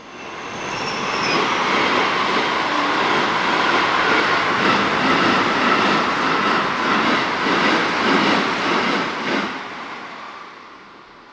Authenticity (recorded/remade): recorded